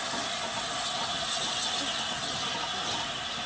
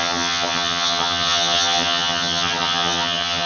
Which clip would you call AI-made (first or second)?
second